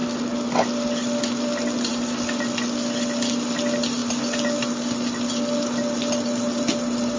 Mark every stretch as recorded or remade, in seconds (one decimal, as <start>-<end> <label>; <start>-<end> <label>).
0.0-7.2 recorded